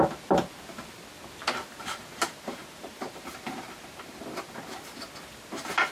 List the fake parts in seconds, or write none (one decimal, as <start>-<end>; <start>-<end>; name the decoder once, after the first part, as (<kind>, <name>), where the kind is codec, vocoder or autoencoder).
1.4-4.2 (vocoder, BigVGAN v2)